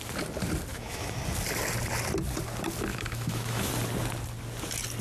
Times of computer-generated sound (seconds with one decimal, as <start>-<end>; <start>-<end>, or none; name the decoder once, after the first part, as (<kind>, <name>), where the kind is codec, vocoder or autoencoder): 0.7-1.2 (autoencoder, DAC-VAE); 2.9-3.7

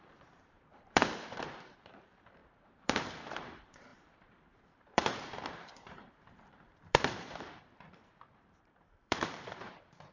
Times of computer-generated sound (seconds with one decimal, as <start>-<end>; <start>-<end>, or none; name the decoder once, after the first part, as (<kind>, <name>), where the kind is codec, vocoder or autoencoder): 0.0-10.1 (vocoder, BigVGAN v2)

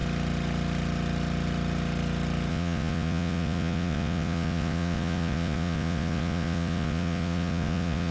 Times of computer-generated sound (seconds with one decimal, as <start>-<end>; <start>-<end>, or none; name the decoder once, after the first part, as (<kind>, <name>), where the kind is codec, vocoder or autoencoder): 2.5-8.1 (vocoder, Vocos)

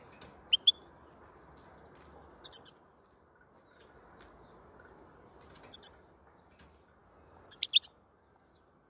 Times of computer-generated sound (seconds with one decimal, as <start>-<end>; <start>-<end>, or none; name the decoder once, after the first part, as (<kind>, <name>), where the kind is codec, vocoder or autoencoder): none

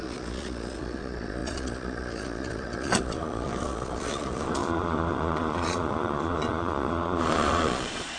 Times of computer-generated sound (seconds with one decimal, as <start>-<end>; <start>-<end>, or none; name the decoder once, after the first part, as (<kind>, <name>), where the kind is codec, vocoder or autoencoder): 0.0-8.2 (vocoder, Vocos)

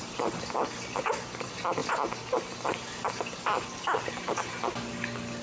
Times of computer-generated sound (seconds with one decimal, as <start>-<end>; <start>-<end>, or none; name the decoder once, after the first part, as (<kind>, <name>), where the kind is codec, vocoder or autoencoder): none

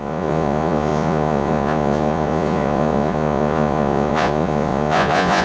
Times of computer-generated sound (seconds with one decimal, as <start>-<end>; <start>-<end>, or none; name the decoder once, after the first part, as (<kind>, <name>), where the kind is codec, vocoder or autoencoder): 0.0-5.4 (vocoder, Vocos)

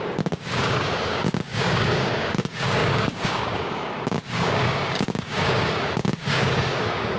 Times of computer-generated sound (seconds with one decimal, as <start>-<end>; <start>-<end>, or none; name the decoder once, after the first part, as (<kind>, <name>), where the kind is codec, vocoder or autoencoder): 0.0-7.2 (codec, DAC)